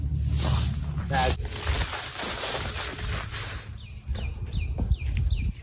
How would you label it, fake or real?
real